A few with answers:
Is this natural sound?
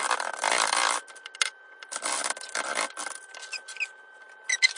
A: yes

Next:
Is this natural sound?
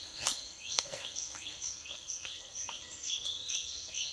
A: no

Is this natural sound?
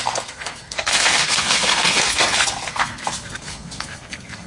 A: no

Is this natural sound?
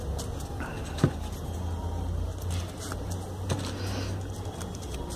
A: yes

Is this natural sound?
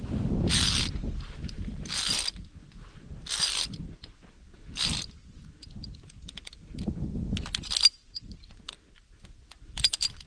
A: yes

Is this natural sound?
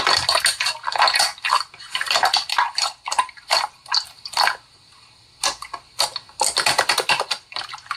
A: yes